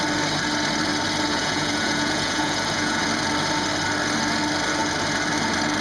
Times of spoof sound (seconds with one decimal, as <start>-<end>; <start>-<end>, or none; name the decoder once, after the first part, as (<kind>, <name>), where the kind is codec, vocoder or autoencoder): 1.3-3.0 (vocoder, Vocos)